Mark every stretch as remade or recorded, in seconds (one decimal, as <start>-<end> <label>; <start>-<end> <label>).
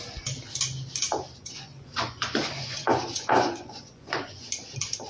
0.0-1.4 recorded; 1.4-4.5 remade; 4.5-5.1 recorded